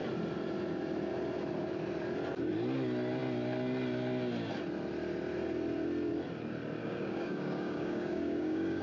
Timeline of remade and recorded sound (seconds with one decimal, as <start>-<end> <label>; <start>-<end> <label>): 0.0-6.8 recorded; 6.8-8.8 remade